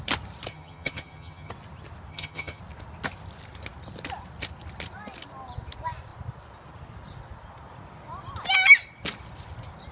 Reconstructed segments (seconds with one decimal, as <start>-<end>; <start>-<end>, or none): 0.5-1.5; 2.1-2.6